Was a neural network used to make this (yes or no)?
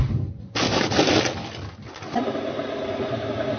no